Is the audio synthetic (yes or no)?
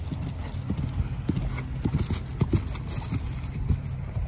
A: no